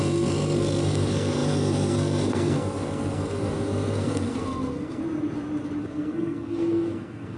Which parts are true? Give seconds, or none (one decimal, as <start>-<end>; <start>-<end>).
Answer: 5.0-5.8